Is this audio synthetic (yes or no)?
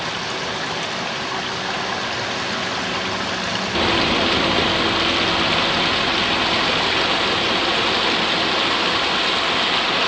no